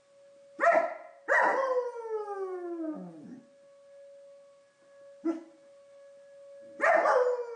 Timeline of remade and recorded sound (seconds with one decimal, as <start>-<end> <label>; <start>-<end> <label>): 0.0-7.6 recorded